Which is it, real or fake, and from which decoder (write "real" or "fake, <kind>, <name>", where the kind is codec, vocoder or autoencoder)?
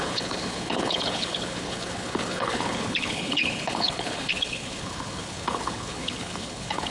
fake, codec, HILCodec